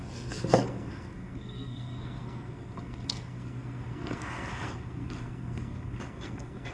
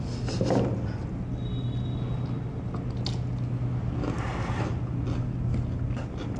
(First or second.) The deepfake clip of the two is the first